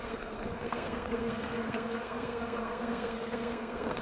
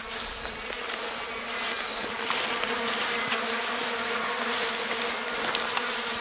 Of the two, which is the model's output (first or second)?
first